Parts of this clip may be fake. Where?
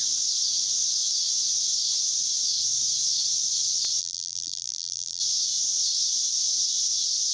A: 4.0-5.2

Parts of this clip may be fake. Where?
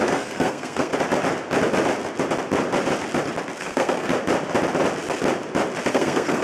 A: 0.0-0.9; 3.6-4.1; 5.9-6.4